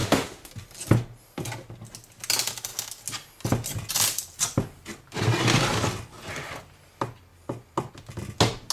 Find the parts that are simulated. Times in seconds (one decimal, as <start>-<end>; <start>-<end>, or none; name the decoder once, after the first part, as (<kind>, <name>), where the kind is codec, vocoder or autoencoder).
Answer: 0.0-0.5 (autoencoder, DAC-VAE)